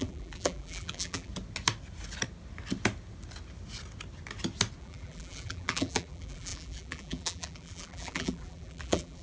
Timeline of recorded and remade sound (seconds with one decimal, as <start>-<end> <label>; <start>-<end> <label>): 0.0-1.3 remade; 1.3-4.8 recorded; 4.8-9.2 remade